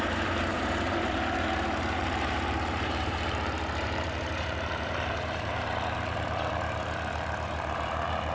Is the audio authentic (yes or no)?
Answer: no